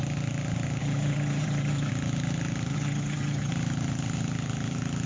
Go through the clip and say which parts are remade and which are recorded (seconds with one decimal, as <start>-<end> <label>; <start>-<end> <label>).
0.0-0.8 recorded; 0.8-1.9 remade; 1.9-2.7 recorded; 2.7-3.5 remade; 3.5-5.1 recorded